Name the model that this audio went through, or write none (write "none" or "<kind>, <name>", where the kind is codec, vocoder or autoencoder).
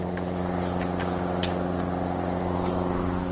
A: none